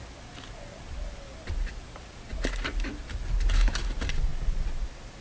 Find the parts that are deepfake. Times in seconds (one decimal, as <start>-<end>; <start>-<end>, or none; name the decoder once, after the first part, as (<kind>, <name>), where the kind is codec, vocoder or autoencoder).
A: none